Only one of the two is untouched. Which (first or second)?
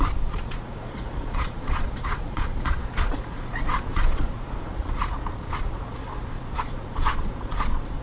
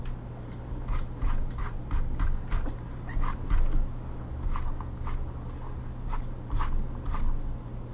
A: second